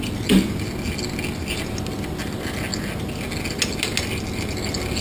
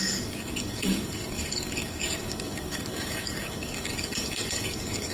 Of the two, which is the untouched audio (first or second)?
first